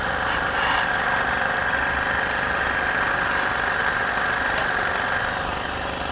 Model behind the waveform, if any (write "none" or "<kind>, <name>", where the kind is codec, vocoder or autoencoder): none